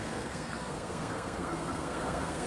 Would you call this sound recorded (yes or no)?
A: no